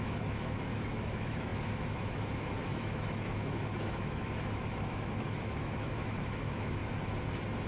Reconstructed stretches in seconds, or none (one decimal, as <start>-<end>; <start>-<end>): 0.0-6.8